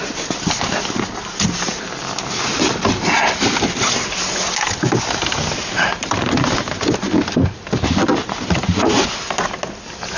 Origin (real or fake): real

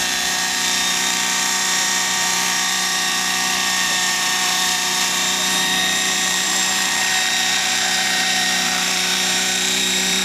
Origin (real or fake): fake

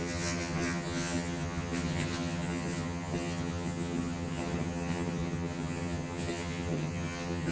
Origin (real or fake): fake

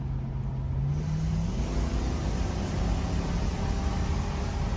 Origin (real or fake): real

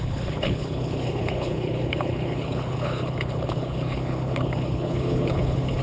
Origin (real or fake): fake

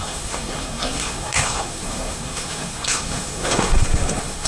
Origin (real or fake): fake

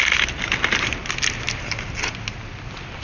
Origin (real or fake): real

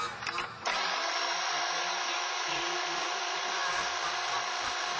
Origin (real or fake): real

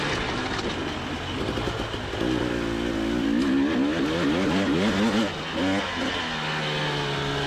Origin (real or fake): real